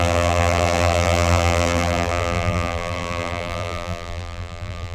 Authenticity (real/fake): fake